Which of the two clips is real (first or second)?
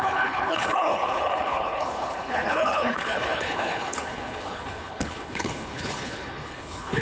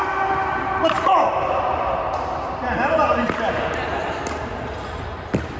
second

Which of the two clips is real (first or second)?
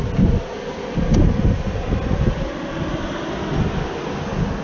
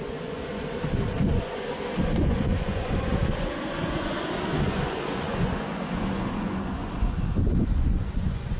first